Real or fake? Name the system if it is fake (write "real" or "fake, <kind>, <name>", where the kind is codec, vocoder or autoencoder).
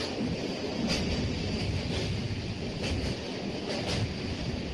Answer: real